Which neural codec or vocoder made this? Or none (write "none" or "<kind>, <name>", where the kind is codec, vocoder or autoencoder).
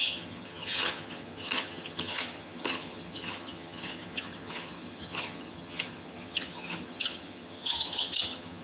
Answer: vocoder, HiFi-GAN